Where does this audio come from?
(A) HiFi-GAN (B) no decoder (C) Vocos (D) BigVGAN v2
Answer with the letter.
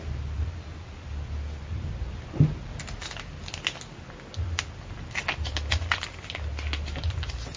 B